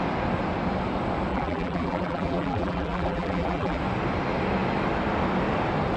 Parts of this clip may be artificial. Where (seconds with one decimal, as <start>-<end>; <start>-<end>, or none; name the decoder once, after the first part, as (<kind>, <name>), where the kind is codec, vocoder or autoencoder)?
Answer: 1.3-3.8 (vocoder, BigVGAN v2)